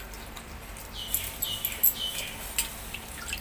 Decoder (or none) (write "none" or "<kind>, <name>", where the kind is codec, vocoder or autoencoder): none